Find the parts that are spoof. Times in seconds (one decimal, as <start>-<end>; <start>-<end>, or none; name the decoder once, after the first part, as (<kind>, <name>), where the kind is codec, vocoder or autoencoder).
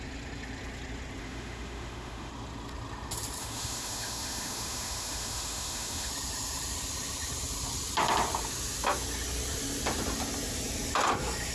1.2-2.3 (autoencoder, DAC-VAE); 3.4-6.1